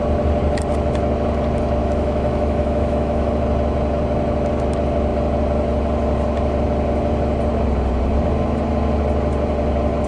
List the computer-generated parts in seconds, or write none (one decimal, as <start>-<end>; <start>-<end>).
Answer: 1.8-3.4